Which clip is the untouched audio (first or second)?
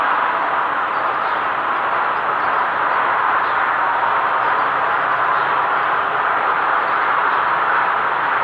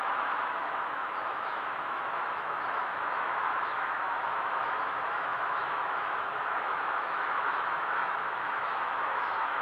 first